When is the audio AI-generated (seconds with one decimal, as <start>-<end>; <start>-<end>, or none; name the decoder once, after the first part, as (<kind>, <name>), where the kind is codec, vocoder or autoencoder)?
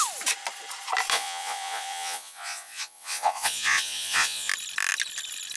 1.1-4.5 (vocoder, Vocos)